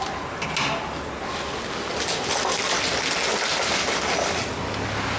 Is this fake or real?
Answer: real